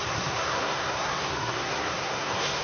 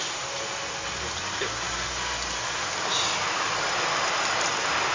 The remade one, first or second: first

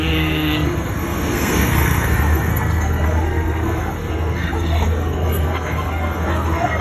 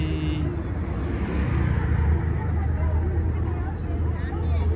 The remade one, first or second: first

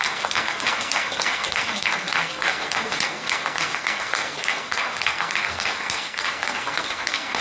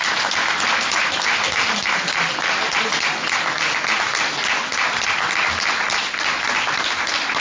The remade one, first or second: first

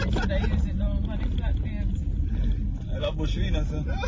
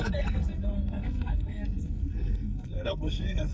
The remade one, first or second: second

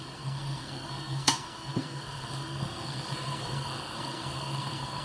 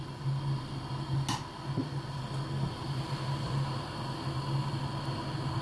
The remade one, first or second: first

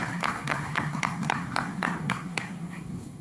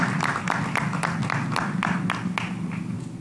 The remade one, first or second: first